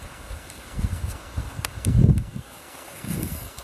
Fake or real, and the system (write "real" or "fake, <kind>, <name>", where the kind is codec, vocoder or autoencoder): fake, codec, SNAC